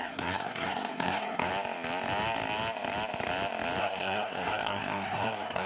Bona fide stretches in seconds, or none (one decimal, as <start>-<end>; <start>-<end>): 1.5-3.8